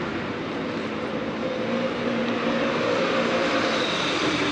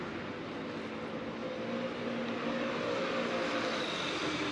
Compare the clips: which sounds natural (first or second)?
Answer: second